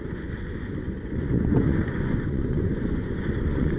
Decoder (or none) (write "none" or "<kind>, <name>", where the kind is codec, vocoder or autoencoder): vocoder, Vocos